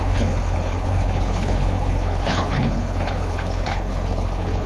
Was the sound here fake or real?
fake